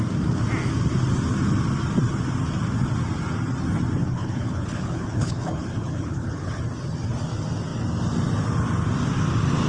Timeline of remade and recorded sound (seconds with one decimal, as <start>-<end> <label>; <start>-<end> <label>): 0.0-4.0 recorded; 4.0-6.6 remade; 6.6-9.7 recorded